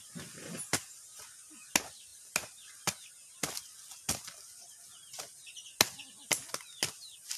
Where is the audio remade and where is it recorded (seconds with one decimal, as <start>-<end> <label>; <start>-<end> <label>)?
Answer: 0.0-7.4 recorded